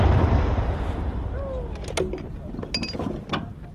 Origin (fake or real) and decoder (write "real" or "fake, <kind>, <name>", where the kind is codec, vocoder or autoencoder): real